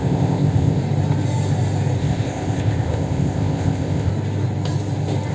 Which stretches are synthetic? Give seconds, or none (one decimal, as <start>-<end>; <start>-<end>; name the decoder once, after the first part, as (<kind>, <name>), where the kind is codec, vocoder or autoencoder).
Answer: 0.0-0.8 (codec, ZipCodec); 2.0-4.1